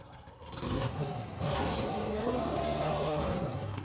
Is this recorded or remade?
remade